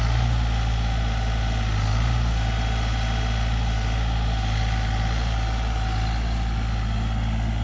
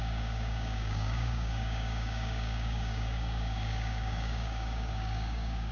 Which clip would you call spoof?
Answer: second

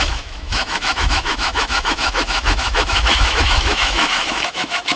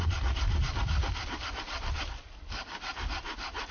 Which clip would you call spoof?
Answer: first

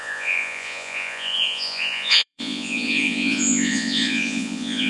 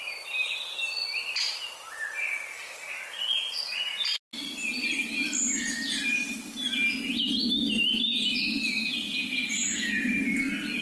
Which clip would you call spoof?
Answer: first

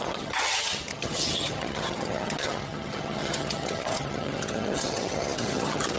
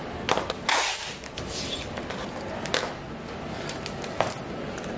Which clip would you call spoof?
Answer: first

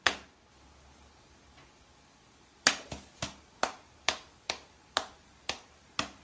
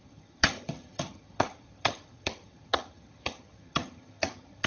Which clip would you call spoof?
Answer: second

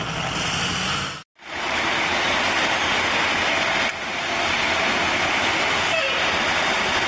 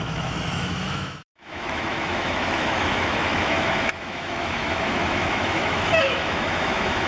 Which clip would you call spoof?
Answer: second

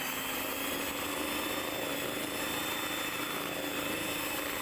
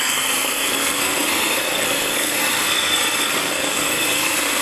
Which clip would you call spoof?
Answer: second